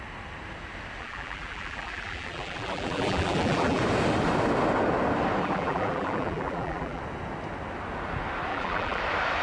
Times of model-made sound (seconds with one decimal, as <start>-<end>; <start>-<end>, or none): 1.0-3.8; 5.4-7.0; 8.5-9.0